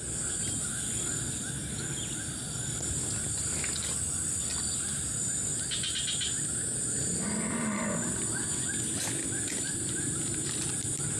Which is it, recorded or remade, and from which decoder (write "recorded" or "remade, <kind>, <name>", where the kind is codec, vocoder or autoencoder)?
recorded